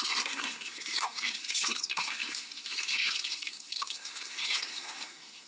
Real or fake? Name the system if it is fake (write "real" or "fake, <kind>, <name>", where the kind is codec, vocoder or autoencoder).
fake, codec, SNAC